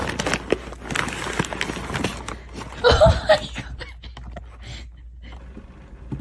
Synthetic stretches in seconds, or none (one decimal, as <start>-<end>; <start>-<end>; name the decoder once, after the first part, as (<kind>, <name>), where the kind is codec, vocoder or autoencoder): none